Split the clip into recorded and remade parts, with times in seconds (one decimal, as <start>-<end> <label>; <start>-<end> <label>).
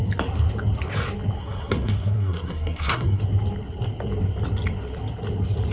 0.0-1.4 recorded; 1.4-3.2 remade; 3.2-5.7 recorded